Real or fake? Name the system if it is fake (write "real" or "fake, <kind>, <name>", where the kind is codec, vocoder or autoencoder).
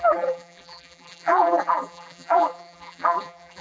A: fake, vocoder, BigVGAN v2